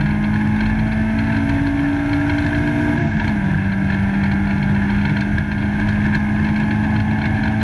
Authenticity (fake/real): real